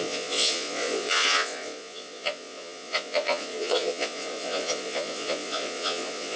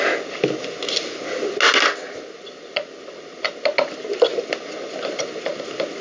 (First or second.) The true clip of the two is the second